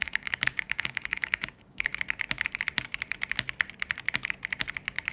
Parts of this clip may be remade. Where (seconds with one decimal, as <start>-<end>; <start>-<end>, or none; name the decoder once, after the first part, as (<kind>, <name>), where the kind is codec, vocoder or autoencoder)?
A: 0.0-1.9 (codec, DAC)